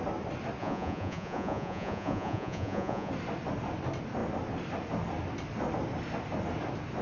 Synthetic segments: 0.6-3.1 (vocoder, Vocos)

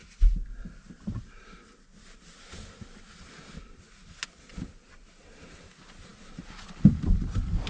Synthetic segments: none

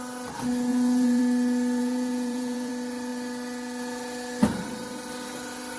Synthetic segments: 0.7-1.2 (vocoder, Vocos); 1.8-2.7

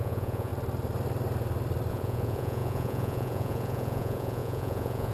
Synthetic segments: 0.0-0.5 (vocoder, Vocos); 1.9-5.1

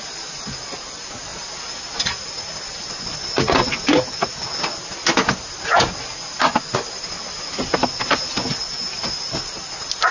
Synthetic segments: none

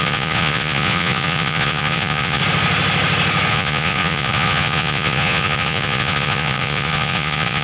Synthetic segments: 0.0-2.4 (vocoder, Vocos); 3.5-7.6

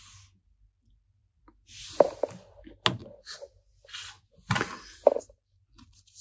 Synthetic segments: none